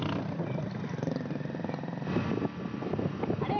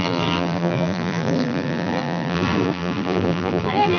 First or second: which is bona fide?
first